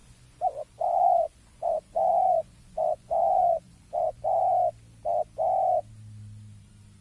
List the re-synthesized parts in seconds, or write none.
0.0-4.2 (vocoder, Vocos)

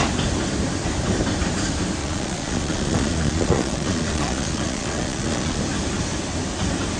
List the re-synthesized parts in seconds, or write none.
2.0-5.6 (vocoder, Vocos)

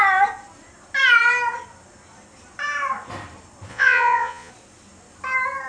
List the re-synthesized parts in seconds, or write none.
3.7-4.5 (vocoder, Vocos)

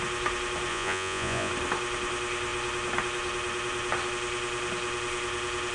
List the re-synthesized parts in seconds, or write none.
0.7-1.5 (vocoder, Vocos)

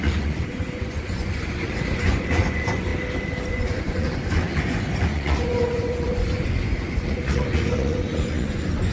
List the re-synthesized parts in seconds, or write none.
0.0-2.9 (vocoder, Vocos); 3.5-8.9

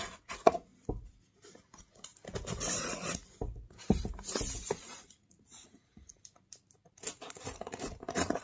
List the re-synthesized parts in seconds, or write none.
0.0-0.7 (vocoder, Vocos); 1.6-2.1; 2.8-3.2; 4.8-6.1; 7.4-8.4

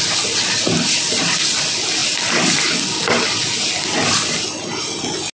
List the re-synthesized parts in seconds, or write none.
none